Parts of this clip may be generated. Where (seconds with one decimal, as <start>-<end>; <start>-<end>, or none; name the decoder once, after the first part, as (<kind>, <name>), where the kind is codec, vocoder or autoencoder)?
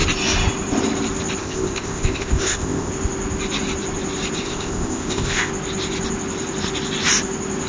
1.4-2.9 (codec, ZipCodec); 4.4-5.5